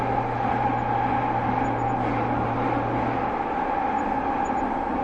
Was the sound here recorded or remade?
recorded